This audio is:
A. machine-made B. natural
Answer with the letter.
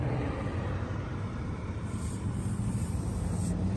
A